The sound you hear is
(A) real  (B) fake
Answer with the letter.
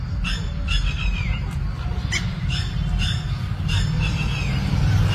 A